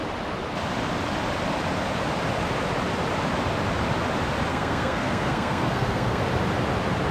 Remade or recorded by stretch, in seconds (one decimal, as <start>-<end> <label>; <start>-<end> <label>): 0.0-4.5 recorded; 4.5-6.2 remade; 6.2-7.1 recorded